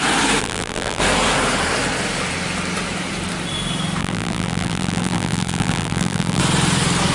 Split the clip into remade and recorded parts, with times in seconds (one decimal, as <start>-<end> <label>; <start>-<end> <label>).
0.0-0.4 recorded; 0.4-1.0 remade; 1.0-4.0 recorded; 4.0-6.4 remade; 6.4-7.1 recorded